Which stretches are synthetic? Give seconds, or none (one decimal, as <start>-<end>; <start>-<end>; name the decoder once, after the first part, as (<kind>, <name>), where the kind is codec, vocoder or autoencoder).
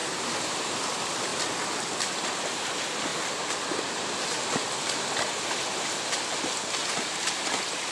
0.0-3.1 (vocoder, BigVGAN v2)